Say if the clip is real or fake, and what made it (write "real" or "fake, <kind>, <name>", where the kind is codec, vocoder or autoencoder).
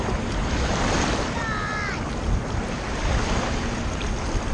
fake, vocoder, BigVGAN v2